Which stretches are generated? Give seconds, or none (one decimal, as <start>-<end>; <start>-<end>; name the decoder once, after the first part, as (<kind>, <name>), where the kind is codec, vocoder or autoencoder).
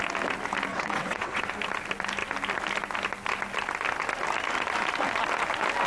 0.7-1.4 (vocoder, WaveNeXt)